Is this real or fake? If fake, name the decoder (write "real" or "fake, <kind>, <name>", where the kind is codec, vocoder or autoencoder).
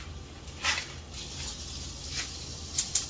real